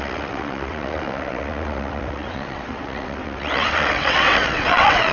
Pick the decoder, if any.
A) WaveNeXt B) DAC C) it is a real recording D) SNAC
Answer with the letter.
A